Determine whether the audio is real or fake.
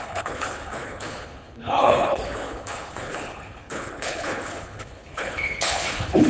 fake